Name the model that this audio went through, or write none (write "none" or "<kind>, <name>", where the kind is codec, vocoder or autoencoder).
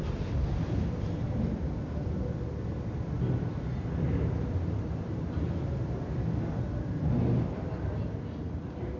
none